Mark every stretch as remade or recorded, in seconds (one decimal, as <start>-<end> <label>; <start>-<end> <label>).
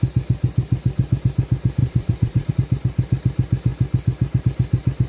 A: 0.0-1.8 recorded; 1.8-2.5 remade; 2.5-5.1 recorded